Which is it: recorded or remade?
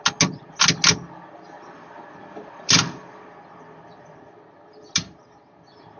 recorded